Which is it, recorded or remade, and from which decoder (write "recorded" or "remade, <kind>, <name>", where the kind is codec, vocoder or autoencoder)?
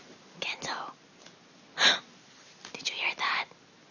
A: recorded